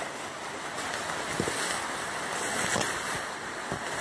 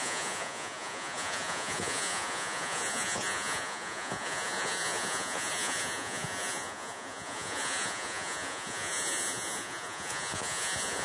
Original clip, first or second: first